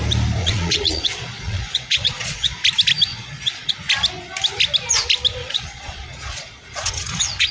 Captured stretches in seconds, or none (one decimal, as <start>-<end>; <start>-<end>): 0.0-0.4; 2.5-3.1; 3.7-5.4